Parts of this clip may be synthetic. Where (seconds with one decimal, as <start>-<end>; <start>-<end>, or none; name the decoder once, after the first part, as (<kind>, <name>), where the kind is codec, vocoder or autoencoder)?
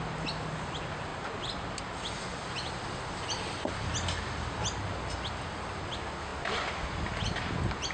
6.3-7.4 (vocoder, BigVGAN v2)